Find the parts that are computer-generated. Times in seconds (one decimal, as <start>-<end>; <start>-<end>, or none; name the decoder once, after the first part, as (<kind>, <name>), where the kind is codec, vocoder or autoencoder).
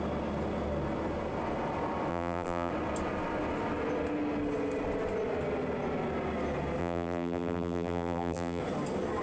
2.1-2.7 (vocoder, BigVGAN v2); 6.8-8.6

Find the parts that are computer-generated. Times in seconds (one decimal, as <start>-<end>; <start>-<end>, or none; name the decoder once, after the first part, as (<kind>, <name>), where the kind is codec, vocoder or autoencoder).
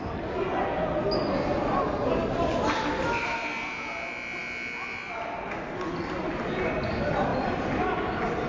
7.3-8.0 (vocoder, BigVGAN v2)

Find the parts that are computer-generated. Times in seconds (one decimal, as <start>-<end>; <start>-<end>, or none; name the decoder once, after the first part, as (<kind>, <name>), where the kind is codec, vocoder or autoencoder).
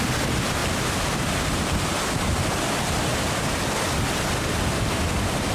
0.6-1.9 (vocoder, BigVGAN v2); 3.1-3.6